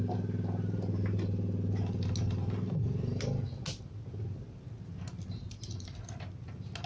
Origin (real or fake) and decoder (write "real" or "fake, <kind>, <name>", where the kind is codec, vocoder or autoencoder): real